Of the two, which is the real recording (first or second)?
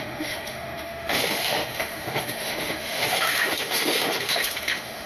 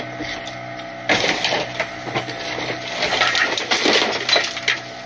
second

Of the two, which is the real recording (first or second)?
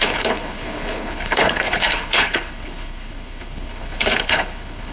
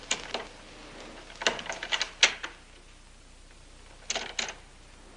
second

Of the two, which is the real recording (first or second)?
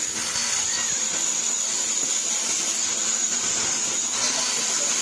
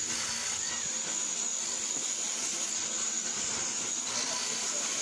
second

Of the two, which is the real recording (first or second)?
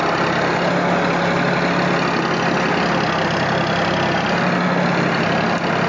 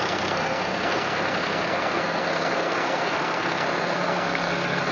first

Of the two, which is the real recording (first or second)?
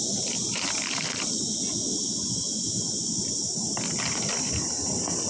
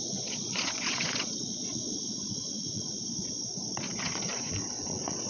first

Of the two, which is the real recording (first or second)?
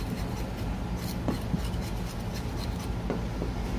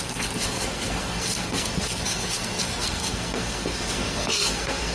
first